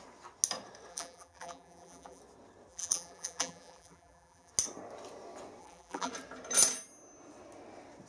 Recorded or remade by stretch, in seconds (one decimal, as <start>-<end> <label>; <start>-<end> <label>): 0.0-0.9 recorded; 0.9-2.2 remade; 2.2-2.7 recorded; 2.7-4.5 remade; 4.5-5.6 recorded; 5.6-6.1 remade; 6.1-8.1 recorded